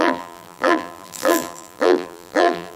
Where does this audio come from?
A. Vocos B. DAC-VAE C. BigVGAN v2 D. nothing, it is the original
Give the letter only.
C